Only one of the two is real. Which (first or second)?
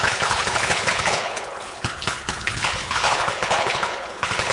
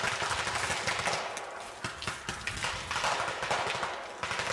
second